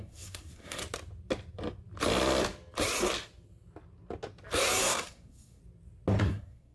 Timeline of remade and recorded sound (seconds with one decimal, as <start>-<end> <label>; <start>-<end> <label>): 0.0-0.8 remade; 0.8-4.8 recorded; 4.8-5.6 remade; 5.6-6.2 recorded; 6.2-6.7 remade